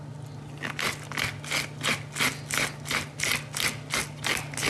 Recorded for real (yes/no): yes